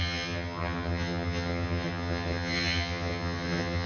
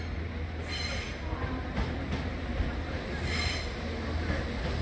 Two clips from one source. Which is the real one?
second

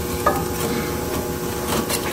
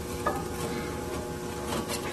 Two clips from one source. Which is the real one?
second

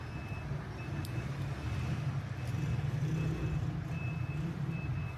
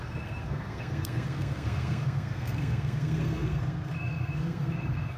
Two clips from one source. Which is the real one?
first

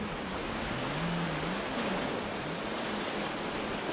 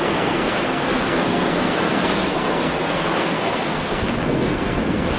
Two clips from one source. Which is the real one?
first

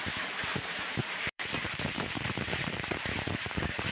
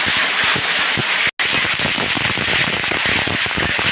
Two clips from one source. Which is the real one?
second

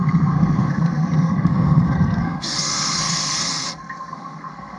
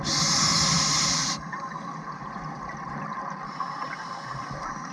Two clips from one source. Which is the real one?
second